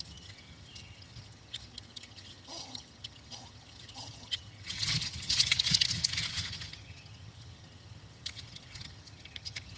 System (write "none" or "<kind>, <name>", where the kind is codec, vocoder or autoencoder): vocoder, HiFi-GAN